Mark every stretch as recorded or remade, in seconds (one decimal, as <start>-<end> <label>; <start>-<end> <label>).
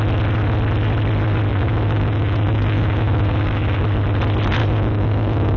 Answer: 0.0-1.5 recorded; 1.5-3.8 remade; 3.8-4.6 recorded; 4.6-5.6 remade